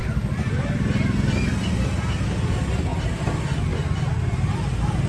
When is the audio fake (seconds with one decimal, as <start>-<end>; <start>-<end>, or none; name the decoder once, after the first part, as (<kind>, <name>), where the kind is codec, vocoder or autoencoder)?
none